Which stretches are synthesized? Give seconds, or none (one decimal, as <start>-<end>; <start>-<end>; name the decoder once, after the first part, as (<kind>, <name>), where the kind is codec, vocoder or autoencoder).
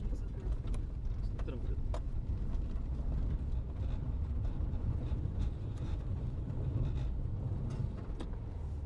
4.2-6.5 (vocoder, Vocos)